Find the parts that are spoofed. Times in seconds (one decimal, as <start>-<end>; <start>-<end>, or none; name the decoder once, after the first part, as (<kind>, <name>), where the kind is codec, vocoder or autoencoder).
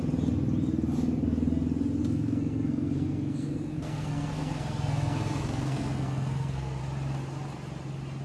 2.0-6.8 (codec, SNAC)